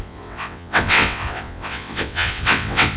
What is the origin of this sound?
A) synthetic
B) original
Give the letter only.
A